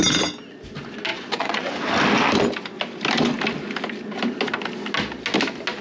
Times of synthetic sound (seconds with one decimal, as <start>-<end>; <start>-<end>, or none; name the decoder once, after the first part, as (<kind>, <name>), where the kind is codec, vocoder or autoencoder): 1.1-1.8 (vocoder, Vocos)